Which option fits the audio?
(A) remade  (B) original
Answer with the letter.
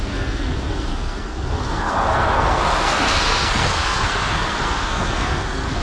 A